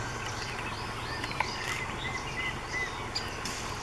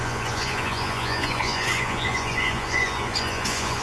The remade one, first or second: second